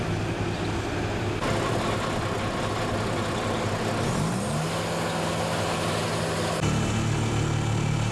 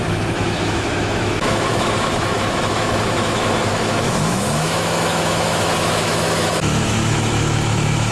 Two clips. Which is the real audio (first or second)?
first